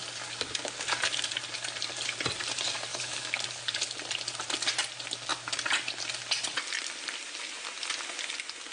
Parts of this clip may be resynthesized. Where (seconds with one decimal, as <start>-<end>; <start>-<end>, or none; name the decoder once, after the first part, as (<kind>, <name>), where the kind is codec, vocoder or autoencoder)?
0.0-1.3 (codec, DAC); 2.9-3.6